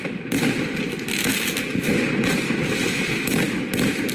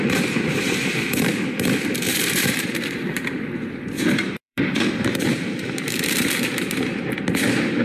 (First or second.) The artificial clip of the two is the second